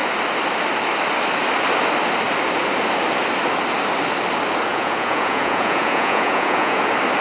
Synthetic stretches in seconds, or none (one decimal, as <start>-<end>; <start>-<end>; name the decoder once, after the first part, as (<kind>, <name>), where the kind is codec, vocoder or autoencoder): 4.7-6.8 (vocoder, Vocos)